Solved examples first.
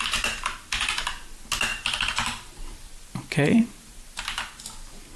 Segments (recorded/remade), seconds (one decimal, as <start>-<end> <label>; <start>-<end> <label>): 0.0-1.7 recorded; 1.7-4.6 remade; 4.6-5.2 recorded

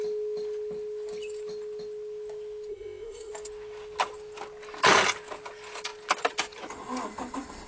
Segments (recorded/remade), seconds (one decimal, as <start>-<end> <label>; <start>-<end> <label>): 0.0-2.7 recorded; 2.7-3.3 remade; 3.3-7.7 recorded

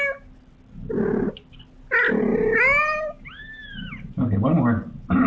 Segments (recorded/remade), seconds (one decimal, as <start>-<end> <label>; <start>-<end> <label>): 0.0-5.3 recorded

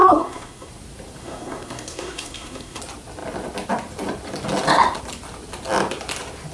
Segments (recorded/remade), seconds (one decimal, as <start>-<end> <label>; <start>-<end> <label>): 0.0-0.7 remade; 0.7-1.2 recorded; 1.2-2.8 remade; 2.8-6.5 recorded

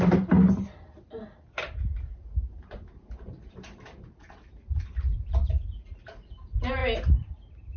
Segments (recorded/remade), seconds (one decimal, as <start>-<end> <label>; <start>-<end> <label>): 0.0-2.4 recorded; 2.4-5.6 remade; 5.6-7.8 recorded

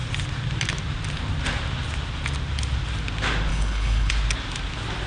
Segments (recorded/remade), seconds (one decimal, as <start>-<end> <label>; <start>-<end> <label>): 0.0-3.5 recorded; 3.5-4.1 remade; 4.1-5.1 recorded

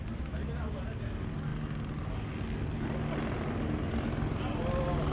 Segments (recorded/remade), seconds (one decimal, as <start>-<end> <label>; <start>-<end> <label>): 0.0-5.1 recorded